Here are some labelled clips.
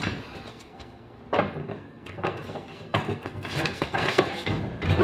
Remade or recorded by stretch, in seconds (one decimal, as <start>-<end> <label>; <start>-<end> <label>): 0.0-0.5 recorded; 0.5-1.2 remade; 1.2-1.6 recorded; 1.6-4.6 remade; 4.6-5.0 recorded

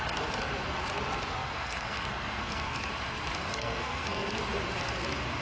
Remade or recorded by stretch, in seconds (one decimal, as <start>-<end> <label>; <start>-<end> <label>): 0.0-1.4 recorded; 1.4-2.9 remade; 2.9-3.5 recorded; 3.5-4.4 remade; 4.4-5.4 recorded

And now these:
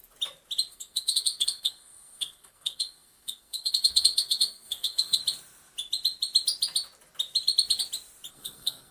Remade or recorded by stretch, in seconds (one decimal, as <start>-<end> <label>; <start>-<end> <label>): 0.0-0.7 recorded; 0.7-5.2 remade; 5.2-8.3 recorded; 8.3-8.9 remade

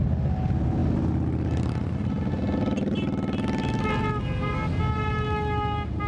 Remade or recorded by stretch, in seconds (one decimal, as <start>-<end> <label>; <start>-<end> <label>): 0.0-6.1 recorded

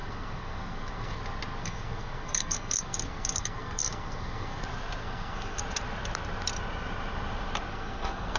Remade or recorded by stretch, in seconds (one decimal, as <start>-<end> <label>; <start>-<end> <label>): 0.0-1.2 remade; 1.2-1.6 recorded; 1.6-4.6 remade; 4.6-5.0 recorded; 5.0-5.6 remade; 5.6-7.7 recorded; 7.7-8.4 remade

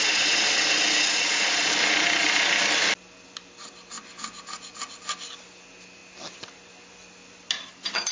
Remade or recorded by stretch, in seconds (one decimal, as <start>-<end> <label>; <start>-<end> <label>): 0.0-8.1 recorded

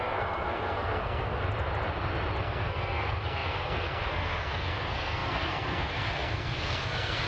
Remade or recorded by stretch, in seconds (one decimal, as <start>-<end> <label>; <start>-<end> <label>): 0.0-1.3 remade; 1.3-2.4 recorded; 2.4-7.3 remade

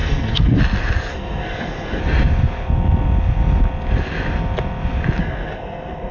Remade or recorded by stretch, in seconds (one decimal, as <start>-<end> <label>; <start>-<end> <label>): 0.0-0.6 remade; 0.6-1.1 recorded; 1.1-2.0 remade; 2.0-5.2 recorded; 5.2-6.1 remade